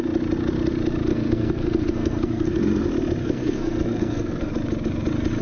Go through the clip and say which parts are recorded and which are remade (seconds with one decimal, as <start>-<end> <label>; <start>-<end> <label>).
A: 0.0-1.1 recorded; 1.1-2.6 remade; 2.6-3.2 recorded; 3.2-4.5 remade; 4.5-5.4 recorded